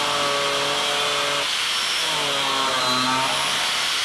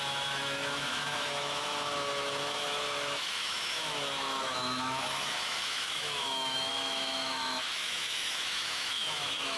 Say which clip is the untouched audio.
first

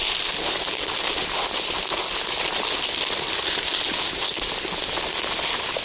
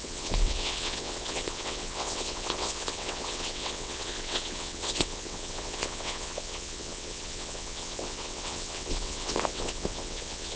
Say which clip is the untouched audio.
first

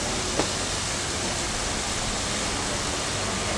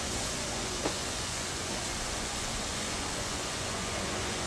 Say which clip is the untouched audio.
first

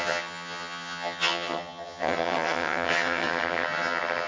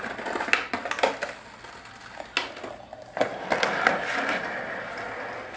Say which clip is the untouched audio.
second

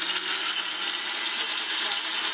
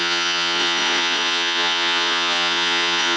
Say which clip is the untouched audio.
first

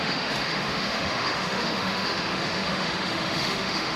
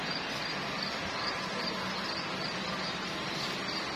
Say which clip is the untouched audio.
second